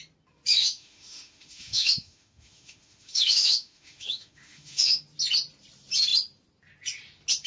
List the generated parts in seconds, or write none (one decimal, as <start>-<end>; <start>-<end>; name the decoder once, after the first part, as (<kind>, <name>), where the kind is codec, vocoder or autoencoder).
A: 0.5-5.0 (autoencoder, DAC-VAE)